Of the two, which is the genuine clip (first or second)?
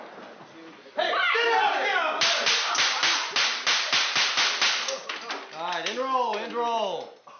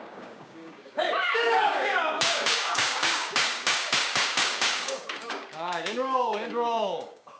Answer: first